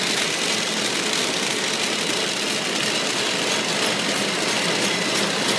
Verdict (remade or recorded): recorded